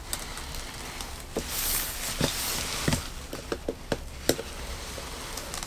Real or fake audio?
real